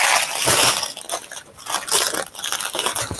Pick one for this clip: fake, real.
real